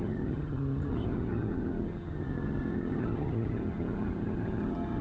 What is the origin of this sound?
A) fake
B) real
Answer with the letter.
A